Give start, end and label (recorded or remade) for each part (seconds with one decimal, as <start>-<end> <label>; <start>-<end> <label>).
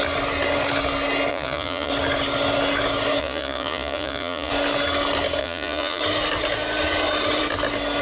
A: 0.0-1.3 recorded; 1.3-1.9 remade; 1.9-3.2 recorded; 3.2-4.5 remade; 4.5-5.4 recorded; 5.4-6.0 remade; 6.0-8.0 recorded